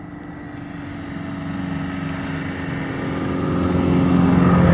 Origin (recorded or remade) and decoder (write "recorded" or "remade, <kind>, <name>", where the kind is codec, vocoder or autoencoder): recorded